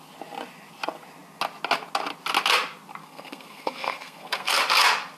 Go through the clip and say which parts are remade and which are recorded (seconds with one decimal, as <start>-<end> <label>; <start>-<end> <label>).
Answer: 0.0-3.0 recorded; 3.0-4.6 remade; 4.6-5.2 recorded